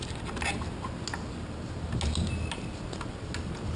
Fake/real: real